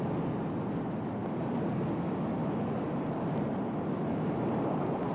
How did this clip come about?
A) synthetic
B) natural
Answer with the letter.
B